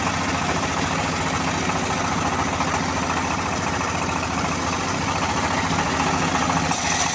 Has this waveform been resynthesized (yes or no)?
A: no